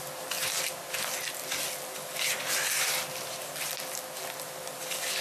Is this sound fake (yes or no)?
no